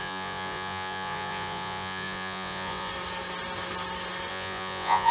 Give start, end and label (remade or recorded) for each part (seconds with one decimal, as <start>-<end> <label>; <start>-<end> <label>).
0.0-2.9 remade; 2.9-4.3 recorded; 4.3-5.1 remade